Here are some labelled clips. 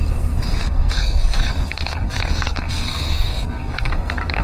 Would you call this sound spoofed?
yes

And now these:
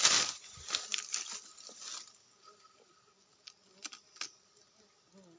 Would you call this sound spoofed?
no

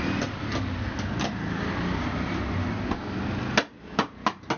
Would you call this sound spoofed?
no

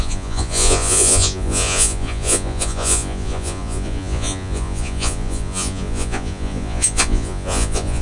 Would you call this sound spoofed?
yes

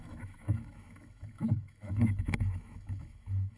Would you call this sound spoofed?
yes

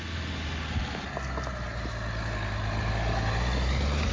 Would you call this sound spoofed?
no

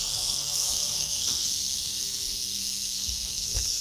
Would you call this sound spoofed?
yes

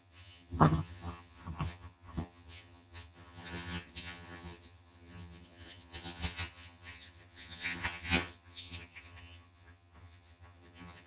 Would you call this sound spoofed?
yes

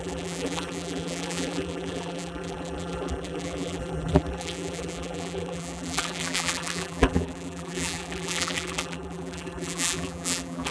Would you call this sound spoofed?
yes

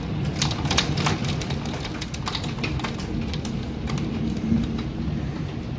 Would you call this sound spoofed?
no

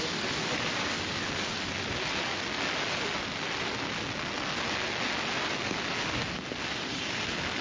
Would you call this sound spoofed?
no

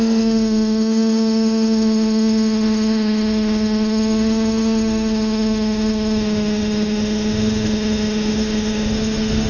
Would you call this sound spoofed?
yes